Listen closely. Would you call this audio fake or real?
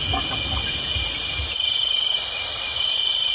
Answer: real